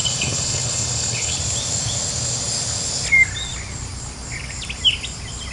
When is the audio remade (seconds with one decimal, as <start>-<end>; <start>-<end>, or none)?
0.0-1.4